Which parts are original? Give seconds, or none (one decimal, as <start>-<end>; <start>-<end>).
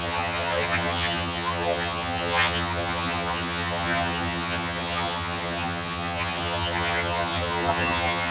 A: none